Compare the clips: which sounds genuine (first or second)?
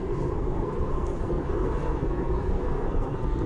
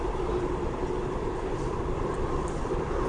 second